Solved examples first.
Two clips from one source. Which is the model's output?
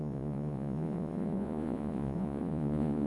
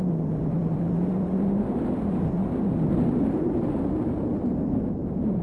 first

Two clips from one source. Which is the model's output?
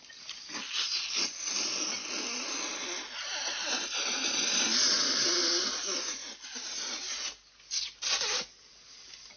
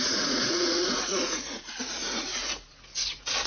second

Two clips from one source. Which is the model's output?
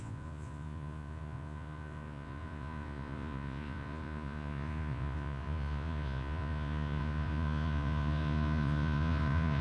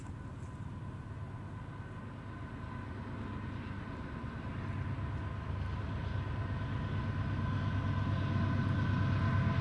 first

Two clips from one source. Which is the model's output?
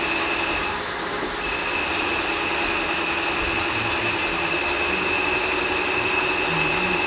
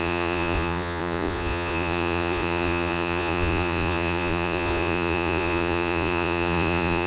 second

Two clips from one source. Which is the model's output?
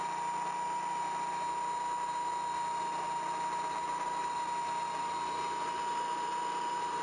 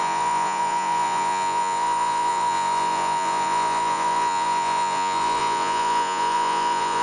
second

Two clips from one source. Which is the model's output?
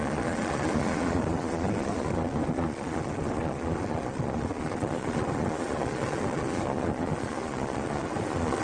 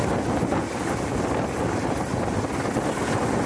first